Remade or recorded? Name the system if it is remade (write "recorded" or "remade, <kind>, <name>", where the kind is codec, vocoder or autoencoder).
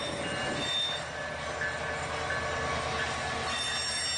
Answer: recorded